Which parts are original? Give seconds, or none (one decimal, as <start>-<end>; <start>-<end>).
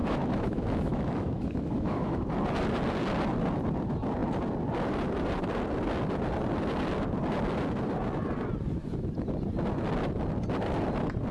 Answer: 2.3-11.3